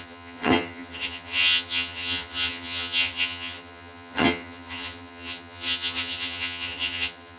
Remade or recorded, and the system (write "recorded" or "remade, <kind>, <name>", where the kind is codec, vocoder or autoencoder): remade, vocoder, HiFi-GAN